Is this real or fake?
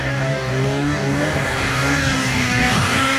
fake